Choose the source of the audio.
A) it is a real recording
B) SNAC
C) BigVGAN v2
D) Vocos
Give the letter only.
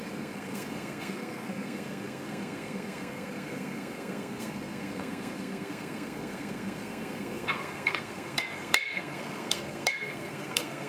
B